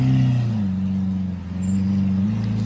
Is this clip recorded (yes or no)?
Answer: yes